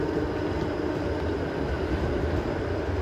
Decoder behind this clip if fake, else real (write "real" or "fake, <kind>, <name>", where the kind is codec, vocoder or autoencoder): real